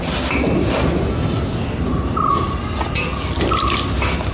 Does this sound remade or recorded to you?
recorded